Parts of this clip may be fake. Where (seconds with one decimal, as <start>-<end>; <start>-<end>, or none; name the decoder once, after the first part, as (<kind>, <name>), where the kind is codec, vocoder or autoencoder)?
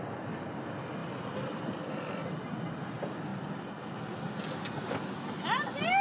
none